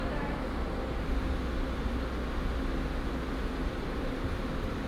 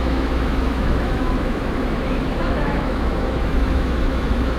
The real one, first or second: first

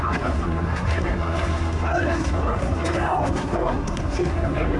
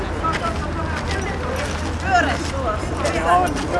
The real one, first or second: second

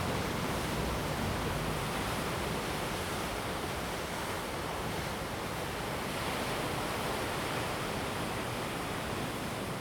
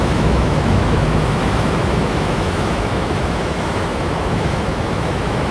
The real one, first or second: first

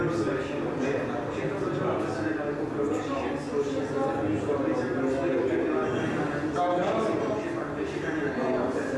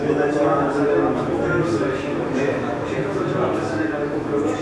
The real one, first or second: first